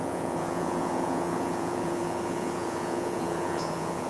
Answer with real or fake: fake